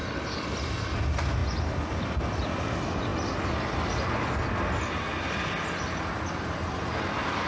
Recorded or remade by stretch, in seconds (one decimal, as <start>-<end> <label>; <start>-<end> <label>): 0.0-7.5 recorded